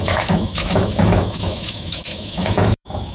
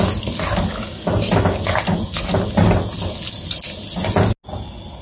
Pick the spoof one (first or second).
first